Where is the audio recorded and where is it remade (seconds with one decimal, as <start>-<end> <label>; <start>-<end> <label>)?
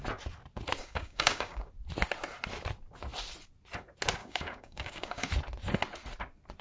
0.0-0.8 recorded; 0.8-1.7 remade; 1.7-4.2 recorded; 4.2-5.3 remade; 5.3-6.6 recorded